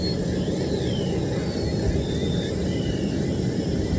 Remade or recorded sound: recorded